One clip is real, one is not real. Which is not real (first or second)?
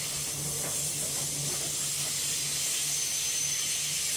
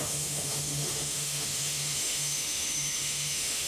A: second